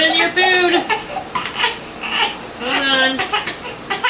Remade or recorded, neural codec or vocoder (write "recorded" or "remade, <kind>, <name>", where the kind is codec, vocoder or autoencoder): recorded